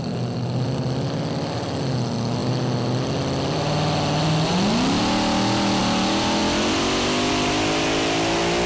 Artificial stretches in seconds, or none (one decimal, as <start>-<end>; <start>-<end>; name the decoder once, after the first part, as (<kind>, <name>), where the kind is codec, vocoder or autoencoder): none